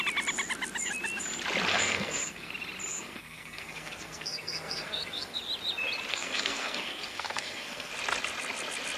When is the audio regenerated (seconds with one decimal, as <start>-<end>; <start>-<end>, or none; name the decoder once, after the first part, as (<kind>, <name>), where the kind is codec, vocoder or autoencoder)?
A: 1.7-2.5 (codec, SNAC); 2.9-5.4; 6.1-7.9